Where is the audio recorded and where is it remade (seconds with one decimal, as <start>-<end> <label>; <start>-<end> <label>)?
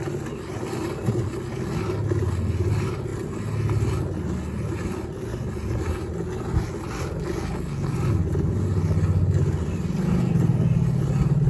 0.0-11.5 recorded